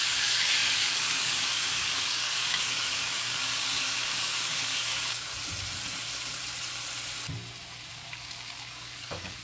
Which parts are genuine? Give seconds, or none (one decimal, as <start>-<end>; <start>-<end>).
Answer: 5.3-7.9